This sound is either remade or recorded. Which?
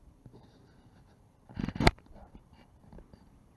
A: remade